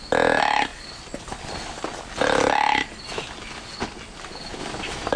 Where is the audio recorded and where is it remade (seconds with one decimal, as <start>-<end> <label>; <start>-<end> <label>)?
0.0-5.2 recorded